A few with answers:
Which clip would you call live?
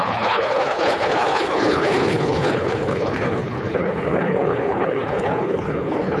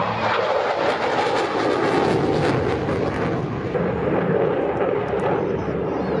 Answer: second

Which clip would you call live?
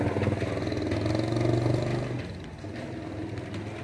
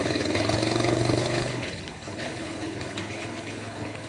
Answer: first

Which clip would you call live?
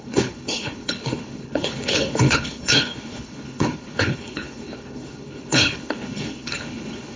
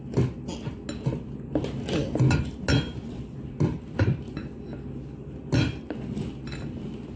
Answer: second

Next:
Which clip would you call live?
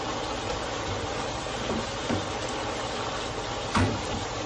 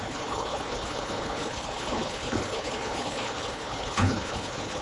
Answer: first